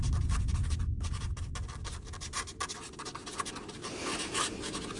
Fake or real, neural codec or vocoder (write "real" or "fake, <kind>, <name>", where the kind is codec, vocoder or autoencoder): real